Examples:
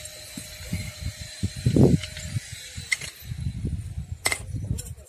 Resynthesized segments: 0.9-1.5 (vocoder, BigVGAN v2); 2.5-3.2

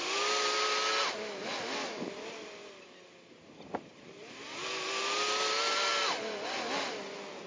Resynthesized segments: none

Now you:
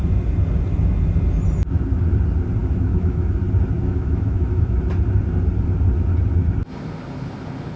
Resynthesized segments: 2.6-3.4 (autoencoder, DAC-VAE); 3.9-4.8

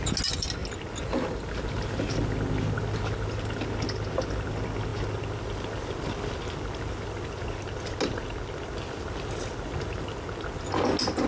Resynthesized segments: none

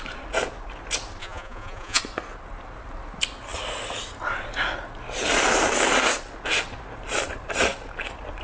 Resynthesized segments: 1.2-2.0 (vocoder, Vocos)

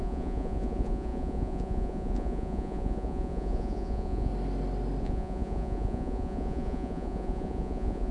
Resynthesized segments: 0.0-4.3 (vocoder, Vocos); 5.0-8.1

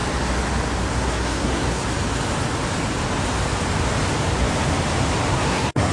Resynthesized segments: 0.9-1.8 (codec, SNAC); 5.3-5.9

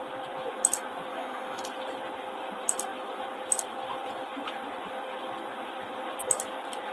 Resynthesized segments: 1.1-1.6 (autoencoder, DAC-VAE)